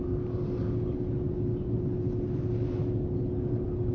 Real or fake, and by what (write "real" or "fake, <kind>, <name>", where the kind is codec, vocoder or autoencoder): real